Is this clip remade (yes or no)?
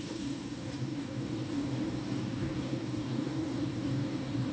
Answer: yes